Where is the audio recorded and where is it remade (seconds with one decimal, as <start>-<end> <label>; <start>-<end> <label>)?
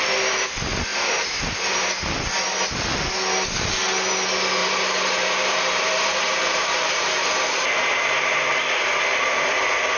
0.0-0.9 recorded; 0.9-1.6 remade; 1.6-4.6 recorded; 4.6-7.3 remade; 7.3-10.0 recorded